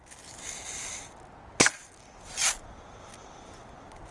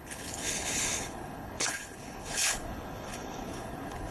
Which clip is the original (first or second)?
first